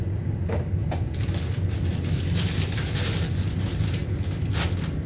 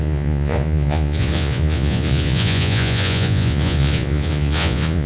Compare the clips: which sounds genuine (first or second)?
first